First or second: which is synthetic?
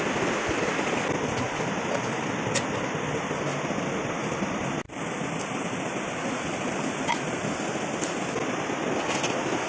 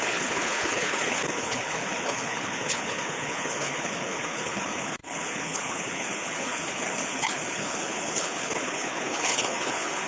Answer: second